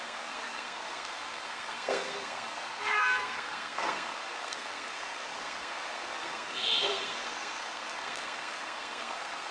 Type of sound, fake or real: fake